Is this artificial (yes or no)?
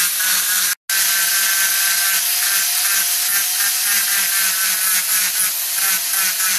no